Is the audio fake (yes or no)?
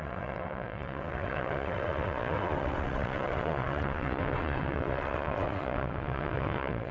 yes